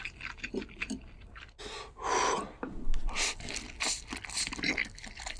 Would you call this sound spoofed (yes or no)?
no